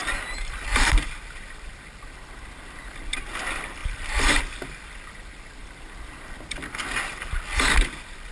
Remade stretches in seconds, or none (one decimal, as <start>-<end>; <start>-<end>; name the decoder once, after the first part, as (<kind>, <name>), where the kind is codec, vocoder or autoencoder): 0.0-2.9 (vocoder, BigVGAN v2); 3.8-4.4; 5.6-6.8